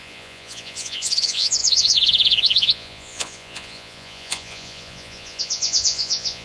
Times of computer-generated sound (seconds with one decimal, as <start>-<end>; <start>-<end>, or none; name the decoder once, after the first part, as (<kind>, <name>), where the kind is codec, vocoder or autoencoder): 0.0-6.4 (vocoder, Vocos)